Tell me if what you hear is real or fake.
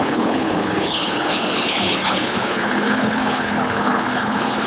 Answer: fake